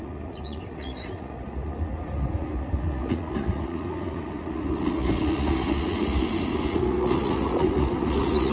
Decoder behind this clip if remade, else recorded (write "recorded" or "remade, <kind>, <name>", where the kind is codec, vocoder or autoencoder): remade, vocoder, Vocos